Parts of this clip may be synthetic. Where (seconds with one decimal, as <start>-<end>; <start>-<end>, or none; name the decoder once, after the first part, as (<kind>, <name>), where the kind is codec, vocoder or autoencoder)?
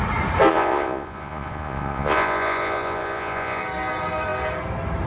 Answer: 0.5-3.6 (vocoder, Vocos)